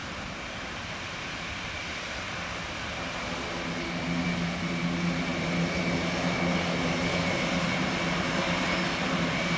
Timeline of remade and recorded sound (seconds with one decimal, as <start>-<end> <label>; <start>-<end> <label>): 0.0-1.7 remade; 1.7-9.6 recorded